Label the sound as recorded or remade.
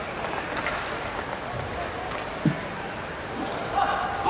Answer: recorded